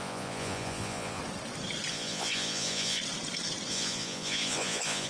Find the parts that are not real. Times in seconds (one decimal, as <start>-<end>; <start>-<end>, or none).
0.0-1.2; 1.9-3.0; 3.7-5.1